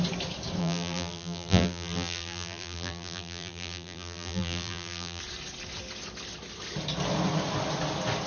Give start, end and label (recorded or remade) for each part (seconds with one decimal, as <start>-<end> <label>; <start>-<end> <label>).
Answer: 0.0-0.6 recorded; 0.6-5.2 remade; 5.2-8.3 recorded